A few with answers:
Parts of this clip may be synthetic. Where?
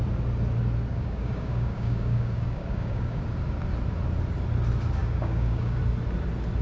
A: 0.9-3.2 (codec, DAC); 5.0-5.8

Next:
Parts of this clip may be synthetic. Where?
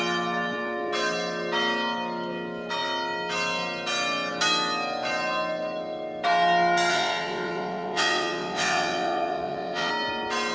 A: 6.9-9.9 (vocoder, WaveNeXt)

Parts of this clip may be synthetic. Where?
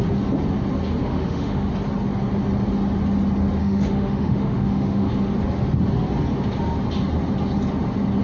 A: 1.0-1.7 (autoencoder, DAC-VAE); 3.6-5.1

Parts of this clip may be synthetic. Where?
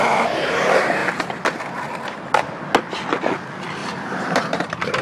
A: 3.8-5.0 (vocoder, BigVGAN v2)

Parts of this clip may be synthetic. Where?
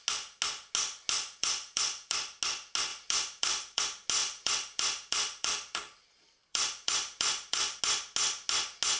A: 1.4-2.4 (vocoder, BigVGAN v2); 2.9-3.8; 4.2-7.8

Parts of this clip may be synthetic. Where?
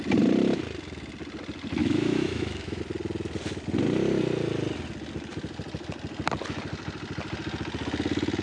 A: 1.8-2.8 (autoencoder, DAC-VAE)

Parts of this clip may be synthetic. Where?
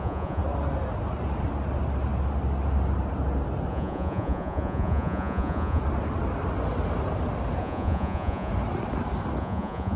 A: 0.0-0.4 (vocoder, Vocos); 3.7-5.8; 7.6-8.5; 9.4-10.0